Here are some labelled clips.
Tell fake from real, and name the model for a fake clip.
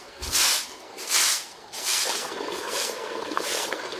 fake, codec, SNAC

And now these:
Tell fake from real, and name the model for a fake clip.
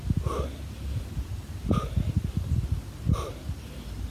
real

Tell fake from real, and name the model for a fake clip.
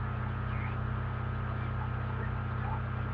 real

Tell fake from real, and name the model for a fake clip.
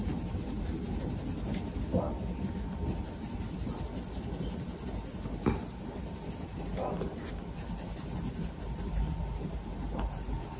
real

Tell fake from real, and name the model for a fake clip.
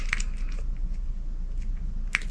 real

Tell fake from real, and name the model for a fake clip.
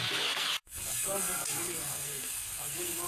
fake, codec, SNAC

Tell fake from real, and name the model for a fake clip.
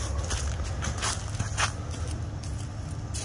real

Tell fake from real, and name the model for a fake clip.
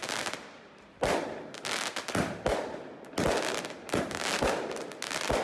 real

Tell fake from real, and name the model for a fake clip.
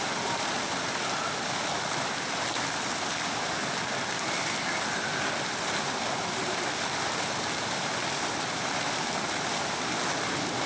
real